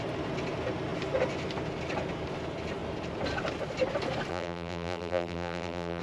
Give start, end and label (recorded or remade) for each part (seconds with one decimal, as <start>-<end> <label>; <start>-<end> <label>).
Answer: 0.0-4.3 recorded; 4.3-6.0 remade